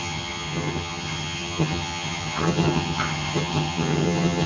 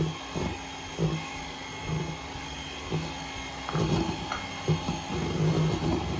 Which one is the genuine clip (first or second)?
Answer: second